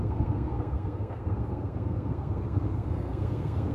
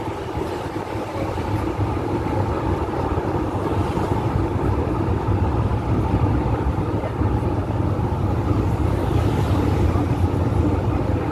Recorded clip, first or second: second